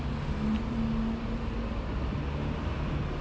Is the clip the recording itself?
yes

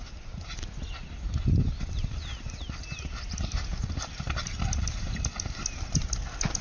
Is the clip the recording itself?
yes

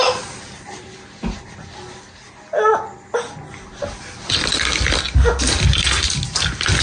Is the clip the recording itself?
yes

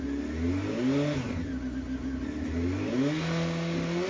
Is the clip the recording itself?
yes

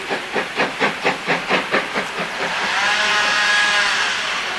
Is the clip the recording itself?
yes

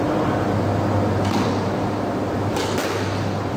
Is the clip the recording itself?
yes